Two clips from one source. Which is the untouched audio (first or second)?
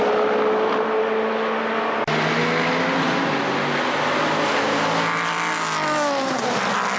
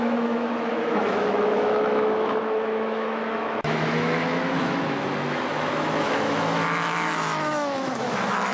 first